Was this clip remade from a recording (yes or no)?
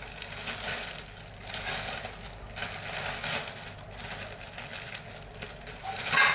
no